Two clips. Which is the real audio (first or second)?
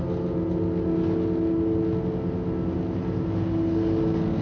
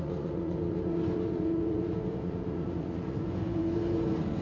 first